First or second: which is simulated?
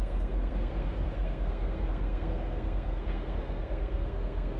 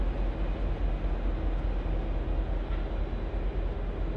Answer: first